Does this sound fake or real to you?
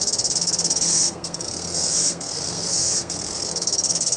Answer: fake